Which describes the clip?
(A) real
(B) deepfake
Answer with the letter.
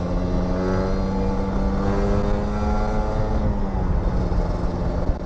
A